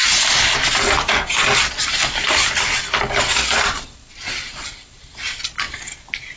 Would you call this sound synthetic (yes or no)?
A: no